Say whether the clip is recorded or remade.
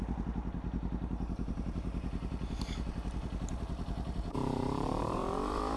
remade